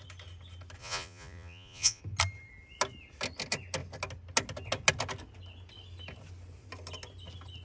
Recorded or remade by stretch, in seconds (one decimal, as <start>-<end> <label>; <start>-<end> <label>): 0.0-0.8 recorded; 0.8-2.0 remade; 2.0-7.6 recorded